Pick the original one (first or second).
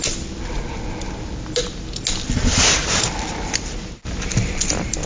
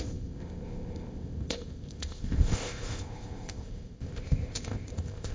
first